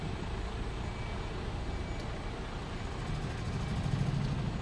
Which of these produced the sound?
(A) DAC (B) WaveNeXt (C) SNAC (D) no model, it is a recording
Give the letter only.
D